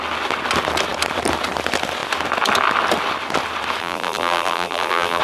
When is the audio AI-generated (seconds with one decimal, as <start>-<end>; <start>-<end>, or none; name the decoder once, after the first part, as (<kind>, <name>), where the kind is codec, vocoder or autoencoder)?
3.8-5.2 (vocoder, BigVGAN v2)